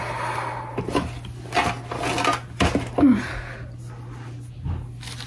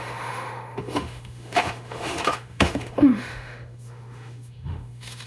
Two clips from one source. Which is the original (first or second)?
first